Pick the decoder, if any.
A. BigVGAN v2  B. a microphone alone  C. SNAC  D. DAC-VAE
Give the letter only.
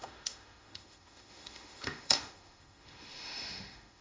D